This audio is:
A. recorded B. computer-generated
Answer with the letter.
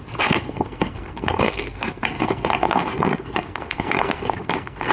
B